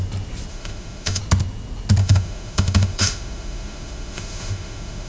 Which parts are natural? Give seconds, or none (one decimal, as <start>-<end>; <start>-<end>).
0.0-0.5; 1.2-2.0